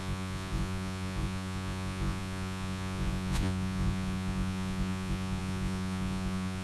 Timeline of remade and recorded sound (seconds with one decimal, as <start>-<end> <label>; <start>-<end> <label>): 0.0-6.6 remade